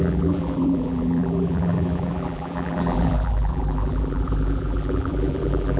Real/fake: fake